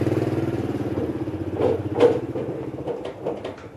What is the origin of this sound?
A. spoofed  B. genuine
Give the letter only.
B